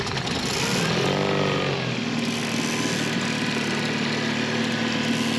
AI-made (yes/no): no